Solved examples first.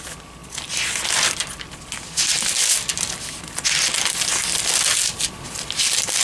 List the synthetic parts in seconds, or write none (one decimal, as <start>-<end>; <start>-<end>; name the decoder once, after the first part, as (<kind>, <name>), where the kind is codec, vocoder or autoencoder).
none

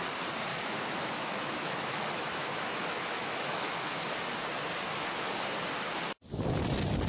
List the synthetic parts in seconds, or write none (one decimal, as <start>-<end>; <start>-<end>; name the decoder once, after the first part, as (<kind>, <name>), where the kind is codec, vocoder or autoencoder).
0.5-3.7 (autoencoder, DAC-VAE)

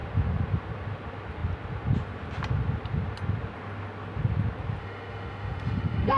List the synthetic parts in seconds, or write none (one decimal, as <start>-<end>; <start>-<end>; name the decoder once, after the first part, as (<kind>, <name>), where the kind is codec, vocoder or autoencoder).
4.8-6.2 (autoencoder, DAC-VAE)